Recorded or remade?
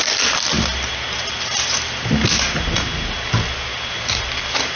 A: recorded